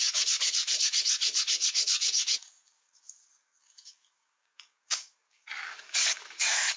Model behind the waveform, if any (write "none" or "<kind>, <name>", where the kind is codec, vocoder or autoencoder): codec, DAC